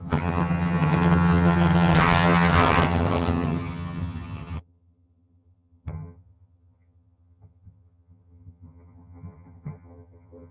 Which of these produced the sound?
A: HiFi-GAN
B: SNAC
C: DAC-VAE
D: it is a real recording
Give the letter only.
A